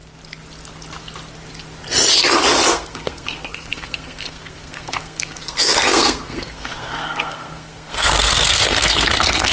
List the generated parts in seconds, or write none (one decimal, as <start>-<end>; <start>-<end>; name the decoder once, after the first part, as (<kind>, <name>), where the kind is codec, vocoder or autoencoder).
2.7-9.5 (codec, SNAC)